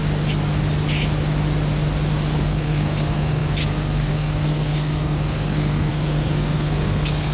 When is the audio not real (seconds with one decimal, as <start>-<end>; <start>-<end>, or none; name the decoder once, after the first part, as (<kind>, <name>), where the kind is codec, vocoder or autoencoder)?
2.4-7.3 (codec, SNAC)